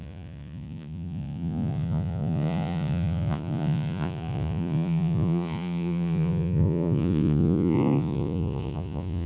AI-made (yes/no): yes